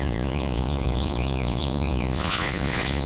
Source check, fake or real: fake